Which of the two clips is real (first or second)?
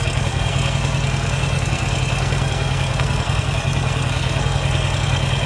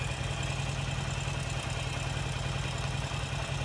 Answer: second